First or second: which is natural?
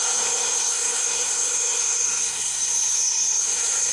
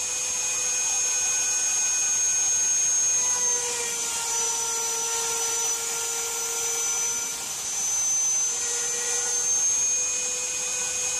second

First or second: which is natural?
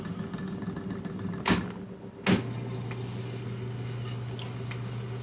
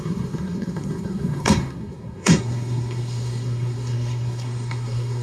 first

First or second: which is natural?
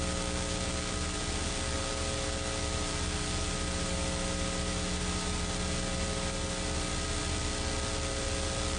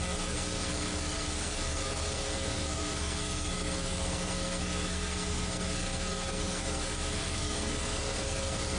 first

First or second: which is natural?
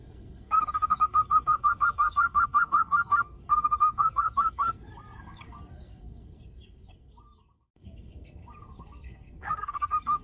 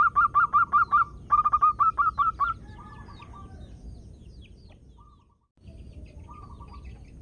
second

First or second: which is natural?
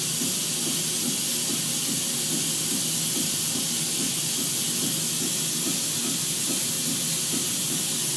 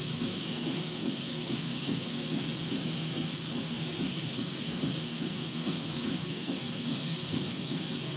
first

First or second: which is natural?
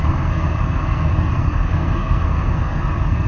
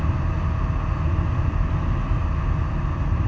second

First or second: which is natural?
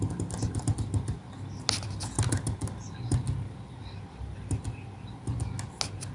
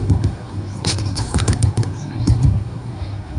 first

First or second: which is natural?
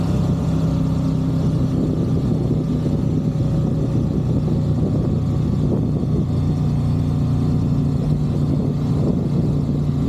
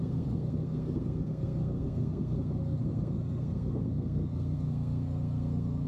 first